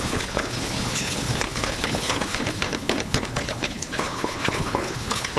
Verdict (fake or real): fake